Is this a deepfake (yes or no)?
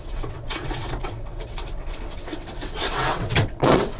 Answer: yes